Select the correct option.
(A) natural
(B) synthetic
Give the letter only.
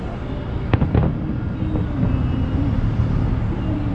A